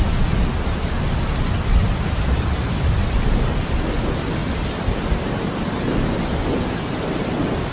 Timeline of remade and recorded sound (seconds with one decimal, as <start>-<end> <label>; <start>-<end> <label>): 0.0-7.7 recorded